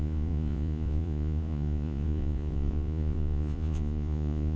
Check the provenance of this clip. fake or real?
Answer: fake